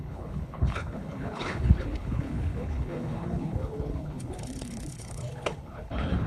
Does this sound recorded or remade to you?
remade